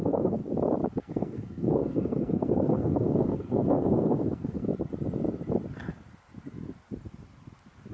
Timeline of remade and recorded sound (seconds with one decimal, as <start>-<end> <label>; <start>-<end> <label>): 0.0-0.4 remade; 0.4-1.0 recorded; 1.0-4.7 remade; 4.7-7.9 recorded